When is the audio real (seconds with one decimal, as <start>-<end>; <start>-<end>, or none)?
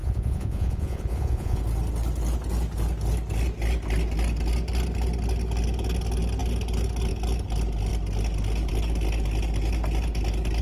1.6-10.6